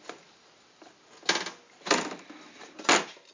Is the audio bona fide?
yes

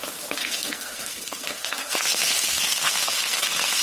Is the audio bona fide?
no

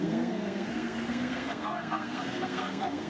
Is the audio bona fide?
no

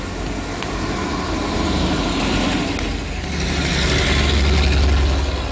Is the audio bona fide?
yes